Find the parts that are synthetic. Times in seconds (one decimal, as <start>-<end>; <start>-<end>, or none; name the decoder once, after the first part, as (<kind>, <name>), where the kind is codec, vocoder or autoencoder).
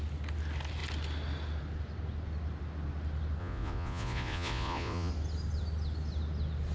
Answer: 3.4-5.1 (vocoder, Vocos)